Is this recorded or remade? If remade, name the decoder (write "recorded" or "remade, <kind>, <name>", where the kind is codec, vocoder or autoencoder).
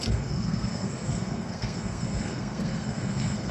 remade, codec, SNAC